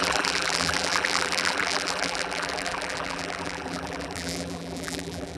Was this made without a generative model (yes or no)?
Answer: no